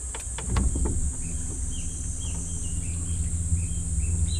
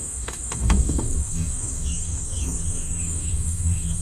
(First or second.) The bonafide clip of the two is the first